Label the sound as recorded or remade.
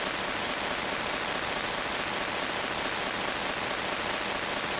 recorded